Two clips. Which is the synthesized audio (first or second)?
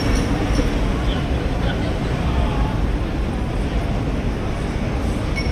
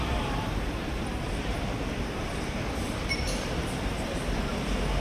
second